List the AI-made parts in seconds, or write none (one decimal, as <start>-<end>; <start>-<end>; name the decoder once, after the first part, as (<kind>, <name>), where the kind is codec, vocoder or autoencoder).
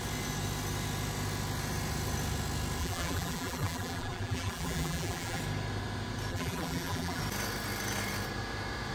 2.8-5.4 (vocoder, BigVGAN v2); 6.3-7.2